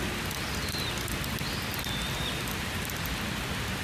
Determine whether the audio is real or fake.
real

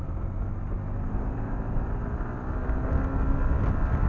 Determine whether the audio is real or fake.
real